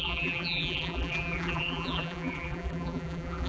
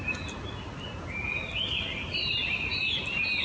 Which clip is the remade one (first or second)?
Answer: first